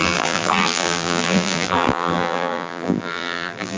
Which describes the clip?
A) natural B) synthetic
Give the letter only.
B